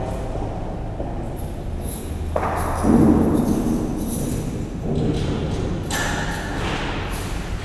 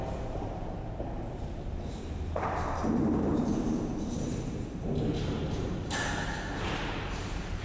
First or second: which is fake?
second